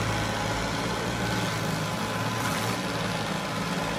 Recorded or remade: recorded